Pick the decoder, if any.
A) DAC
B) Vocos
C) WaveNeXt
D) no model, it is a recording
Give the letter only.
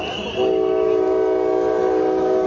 D